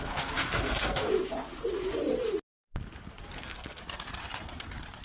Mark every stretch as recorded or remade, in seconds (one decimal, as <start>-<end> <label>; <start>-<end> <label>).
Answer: 0.0-1.1 remade; 1.1-3.2 recorded; 3.2-3.8 remade; 3.8-5.0 recorded